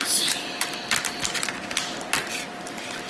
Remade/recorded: recorded